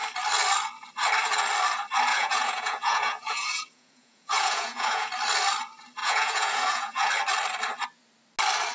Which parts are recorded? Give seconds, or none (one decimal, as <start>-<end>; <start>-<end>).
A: 0.0-2.1; 5.1-6.0; 7.1-8.7